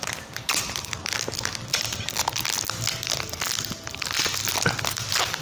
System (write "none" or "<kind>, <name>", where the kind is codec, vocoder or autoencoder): none